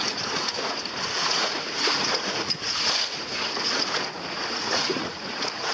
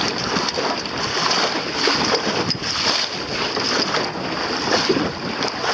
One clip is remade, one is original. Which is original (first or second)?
second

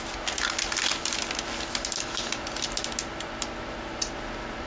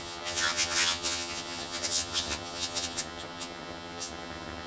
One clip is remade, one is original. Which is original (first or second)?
first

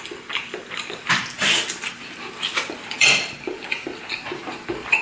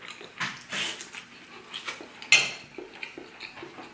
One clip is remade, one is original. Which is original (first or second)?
second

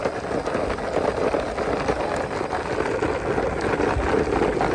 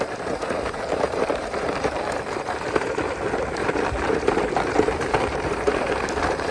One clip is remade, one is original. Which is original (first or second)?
first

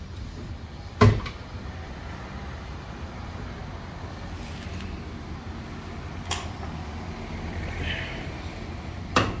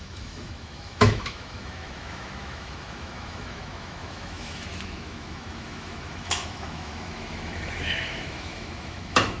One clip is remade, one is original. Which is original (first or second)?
first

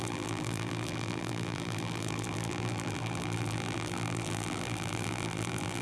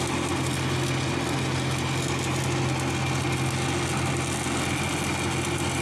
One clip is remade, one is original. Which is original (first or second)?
second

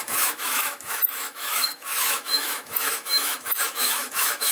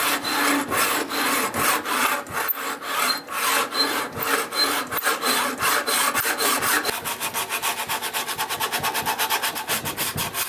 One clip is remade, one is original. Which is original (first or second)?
second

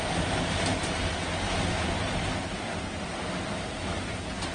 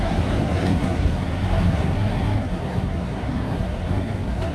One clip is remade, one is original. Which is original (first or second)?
first